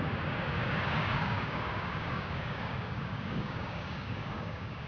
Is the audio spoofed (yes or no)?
yes